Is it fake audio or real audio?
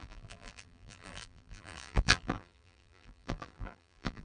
fake